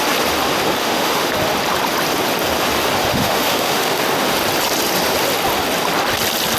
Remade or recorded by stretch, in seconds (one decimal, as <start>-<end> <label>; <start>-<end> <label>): 0.0-0.8 recorded; 0.8-1.3 remade; 1.3-3.1 recorded; 3.1-4.0 remade; 4.0-6.6 recorded